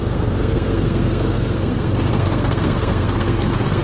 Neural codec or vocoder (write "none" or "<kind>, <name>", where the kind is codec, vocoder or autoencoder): codec, SNAC